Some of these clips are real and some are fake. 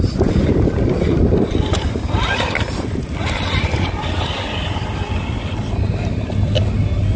real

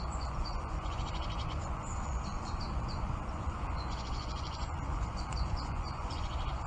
fake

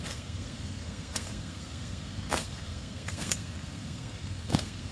fake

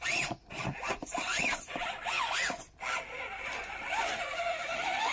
real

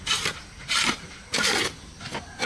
real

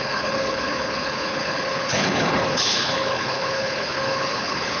fake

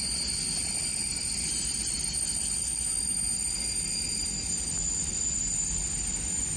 real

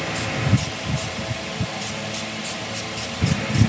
real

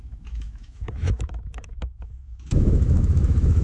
fake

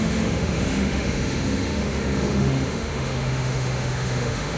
fake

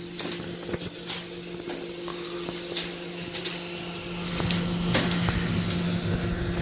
real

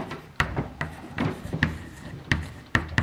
fake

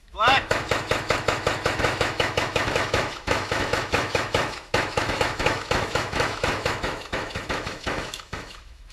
fake